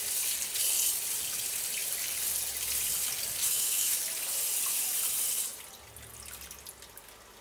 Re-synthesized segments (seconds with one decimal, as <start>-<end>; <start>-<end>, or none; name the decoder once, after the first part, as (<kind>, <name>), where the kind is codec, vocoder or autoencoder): 3.4-4.0 (autoencoder, DAC-VAE)